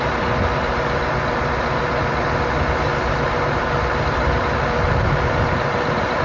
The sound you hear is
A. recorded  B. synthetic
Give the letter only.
A